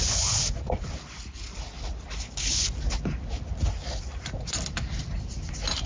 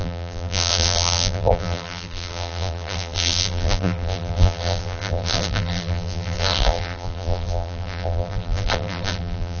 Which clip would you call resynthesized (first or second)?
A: second